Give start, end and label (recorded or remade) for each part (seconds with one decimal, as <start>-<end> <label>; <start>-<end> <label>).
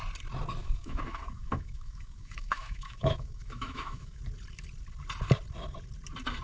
0.0-0.6 recorded; 0.6-4.2 remade; 4.2-6.4 recorded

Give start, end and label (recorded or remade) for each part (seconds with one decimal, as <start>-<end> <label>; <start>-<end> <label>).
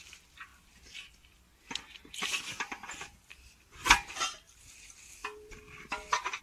0.0-0.5 remade; 0.5-4.1 recorded; 4.1-6.4 remade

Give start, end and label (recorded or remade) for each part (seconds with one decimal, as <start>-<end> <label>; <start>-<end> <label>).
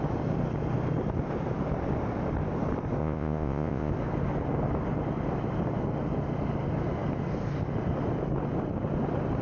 0.0-3.0 recorded; 3.0-3.9 remade; 3.9-9.4 recorded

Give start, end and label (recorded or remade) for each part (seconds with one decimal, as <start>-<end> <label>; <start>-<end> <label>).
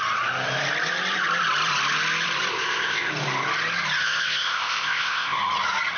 0.0-2.5 recorded; 2.5-3.1 remade; 3.1-4.0 recorded; 4.0-5.4 remade; 5.4-6.0 recorded